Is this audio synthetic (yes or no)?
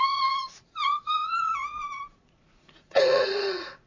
yes